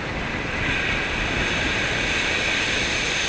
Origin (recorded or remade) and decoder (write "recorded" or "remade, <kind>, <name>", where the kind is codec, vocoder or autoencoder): recorded